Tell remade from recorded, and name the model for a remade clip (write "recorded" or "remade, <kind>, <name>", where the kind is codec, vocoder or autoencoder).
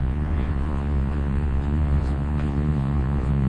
remade, vocoder, Vocos